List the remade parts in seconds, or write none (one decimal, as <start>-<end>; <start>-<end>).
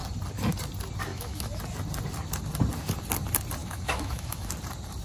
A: 1.1-1.6; 3.6-4.5